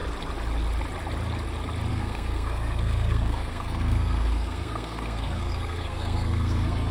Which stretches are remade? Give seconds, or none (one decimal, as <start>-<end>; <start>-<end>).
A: 1.9-6.9